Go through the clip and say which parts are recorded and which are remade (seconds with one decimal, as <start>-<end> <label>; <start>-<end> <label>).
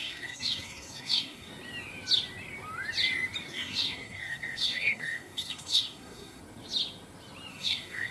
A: 0.0-1.5 remade; 1.5-3.4 recorded; 3.4-6.4 remade; 6.4-7.5 recorded; 7.5-8.1 remade